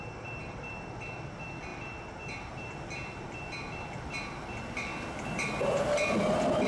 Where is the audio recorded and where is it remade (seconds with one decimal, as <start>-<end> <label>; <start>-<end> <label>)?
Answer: 0.0-6.7 recorded